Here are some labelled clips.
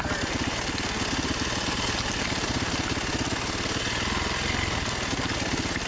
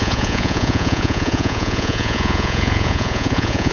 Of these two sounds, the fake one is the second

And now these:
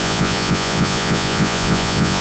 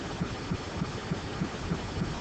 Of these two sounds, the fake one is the first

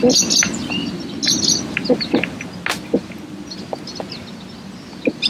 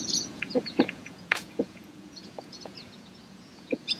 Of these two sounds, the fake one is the second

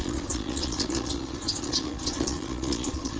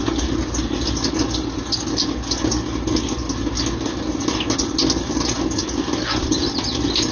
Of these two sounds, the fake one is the first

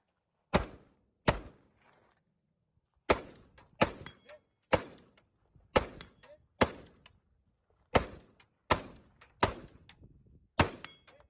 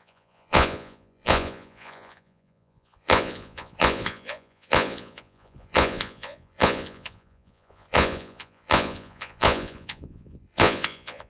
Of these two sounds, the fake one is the second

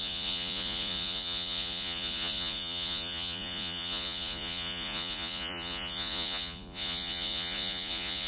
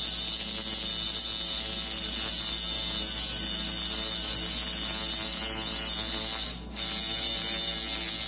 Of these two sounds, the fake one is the first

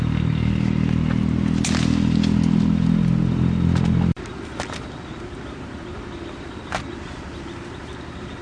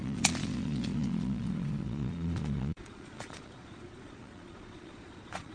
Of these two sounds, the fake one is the second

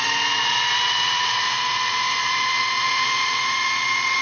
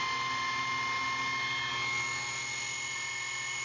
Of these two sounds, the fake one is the first